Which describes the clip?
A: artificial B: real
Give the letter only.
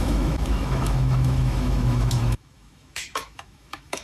A